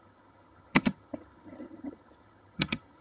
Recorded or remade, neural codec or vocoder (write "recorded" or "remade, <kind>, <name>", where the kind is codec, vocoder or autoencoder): remade, vocoder, HiFi-GAN